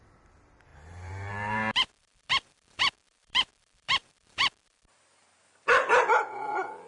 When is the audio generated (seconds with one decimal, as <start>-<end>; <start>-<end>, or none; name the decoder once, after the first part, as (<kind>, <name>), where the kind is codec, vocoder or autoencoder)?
0.7-4.8 (vocoder, BigVGAN v2)